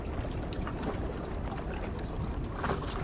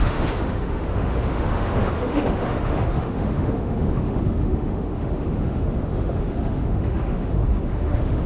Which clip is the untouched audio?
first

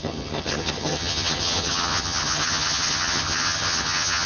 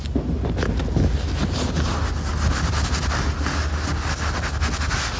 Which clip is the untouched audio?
second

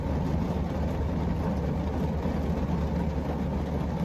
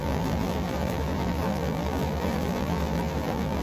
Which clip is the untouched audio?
first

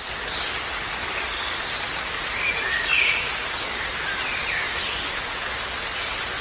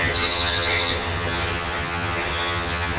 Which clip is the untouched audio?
first